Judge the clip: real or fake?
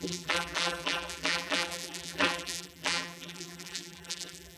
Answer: fake